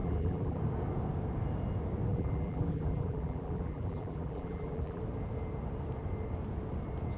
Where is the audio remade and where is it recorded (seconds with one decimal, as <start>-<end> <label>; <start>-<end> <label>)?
0.0-0.6 remade; 0.6-2.1 recorded; 2.1-5.0 remade; 5.0-7.2 recorded